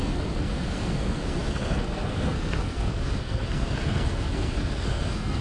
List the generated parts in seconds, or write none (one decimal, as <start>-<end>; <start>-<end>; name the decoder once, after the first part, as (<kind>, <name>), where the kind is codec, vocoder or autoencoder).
0.0-5.4 (codec, SNAC)